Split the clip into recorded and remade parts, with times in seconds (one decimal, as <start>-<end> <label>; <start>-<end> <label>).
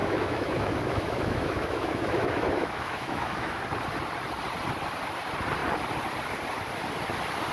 0.0-3.6 remade; 3.6-7.5 recorded